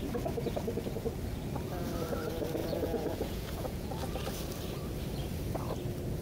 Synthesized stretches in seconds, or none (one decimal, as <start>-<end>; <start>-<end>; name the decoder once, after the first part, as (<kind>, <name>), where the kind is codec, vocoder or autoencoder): 2.6-3.9 (vocoder, Vocos)